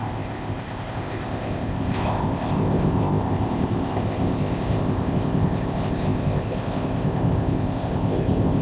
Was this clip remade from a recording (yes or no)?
yes